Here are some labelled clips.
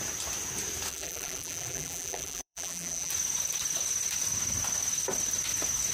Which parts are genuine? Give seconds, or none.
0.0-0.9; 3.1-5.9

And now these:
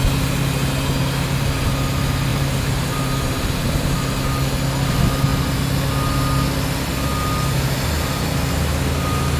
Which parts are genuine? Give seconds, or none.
0.0-2.3; 4.1-9.4

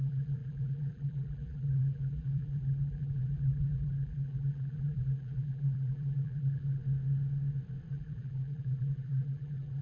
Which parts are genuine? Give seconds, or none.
6.8-7.9

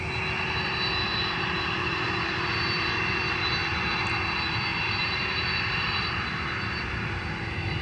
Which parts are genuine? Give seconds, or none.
0.0-1.1; 3.8-4.7; 7.2-7.8

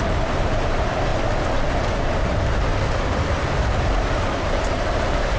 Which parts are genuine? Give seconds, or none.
1.1-1.7; 2.7-3.3

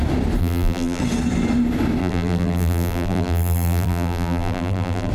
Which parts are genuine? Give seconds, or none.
0.0-0.4; 1.0-2.0

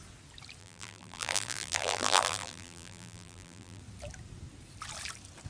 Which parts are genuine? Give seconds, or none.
0.0-0.6; 3.8-5.5